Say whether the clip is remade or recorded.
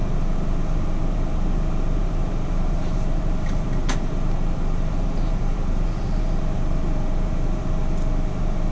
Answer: remade